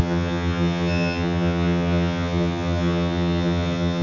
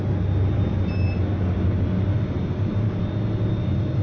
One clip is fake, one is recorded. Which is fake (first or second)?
first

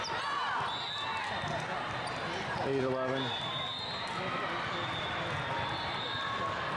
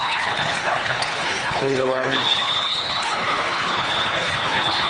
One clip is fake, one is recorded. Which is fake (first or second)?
second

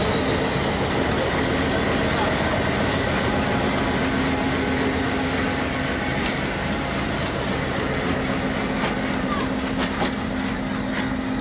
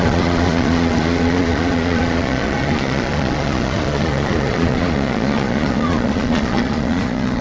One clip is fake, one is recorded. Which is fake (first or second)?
second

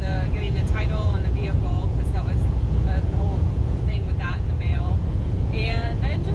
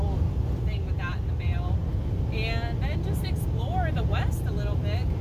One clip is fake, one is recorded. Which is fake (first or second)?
first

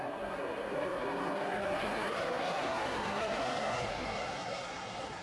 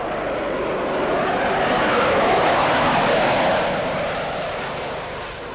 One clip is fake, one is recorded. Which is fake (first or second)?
first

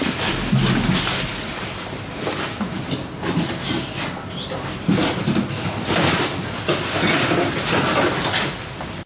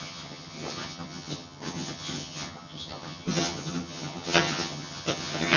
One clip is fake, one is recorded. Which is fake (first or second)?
second